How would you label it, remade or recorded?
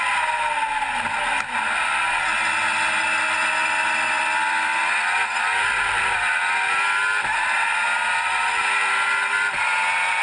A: recorded